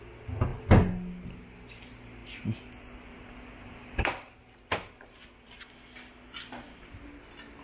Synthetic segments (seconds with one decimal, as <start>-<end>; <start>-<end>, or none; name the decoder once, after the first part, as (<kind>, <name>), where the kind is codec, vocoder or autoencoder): none